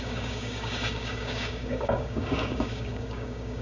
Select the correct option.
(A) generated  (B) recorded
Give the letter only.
A